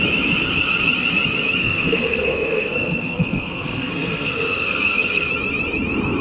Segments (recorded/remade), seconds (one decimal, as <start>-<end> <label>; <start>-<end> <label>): 0.0-1.6 recorded; 1.6-5.3 remade; 5.3-6.2 recorded